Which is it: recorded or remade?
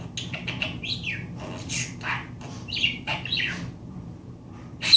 recorded